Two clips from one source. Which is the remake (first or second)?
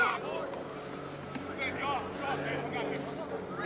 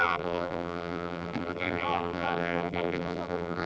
second